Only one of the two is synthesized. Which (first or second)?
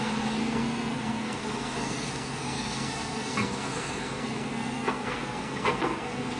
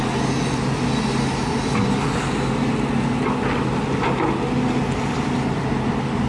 first